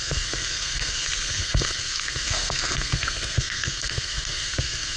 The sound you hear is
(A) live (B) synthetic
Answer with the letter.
B